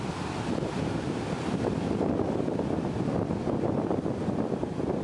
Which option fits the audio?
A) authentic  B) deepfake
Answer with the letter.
A